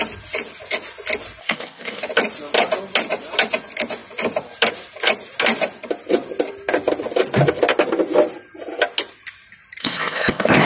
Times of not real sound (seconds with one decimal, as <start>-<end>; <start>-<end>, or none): 1.4-2.0; 9.8-10.7